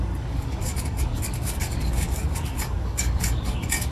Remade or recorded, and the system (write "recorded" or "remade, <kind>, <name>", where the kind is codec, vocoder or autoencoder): remade, codec, DAC